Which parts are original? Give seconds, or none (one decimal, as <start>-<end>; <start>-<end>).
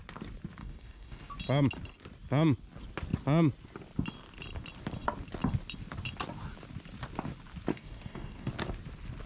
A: 0.0-0.6; 1.3-7.7; 8.5-9.3